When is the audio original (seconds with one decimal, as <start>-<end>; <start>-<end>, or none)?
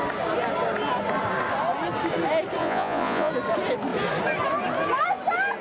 0.0-2.6; 3.3-5.6